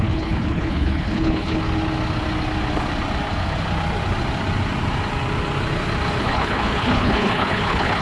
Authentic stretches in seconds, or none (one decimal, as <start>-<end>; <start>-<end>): 1.6-6.2

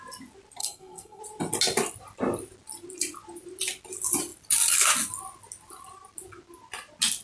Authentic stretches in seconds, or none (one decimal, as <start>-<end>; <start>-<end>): 0.0-0.6; 1.2-7.2